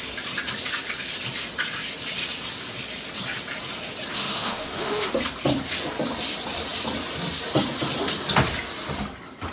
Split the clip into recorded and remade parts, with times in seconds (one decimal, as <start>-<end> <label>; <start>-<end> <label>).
0.0-4.1 recorded; 4.1-5.2 remade; 5.2-9.5 recorded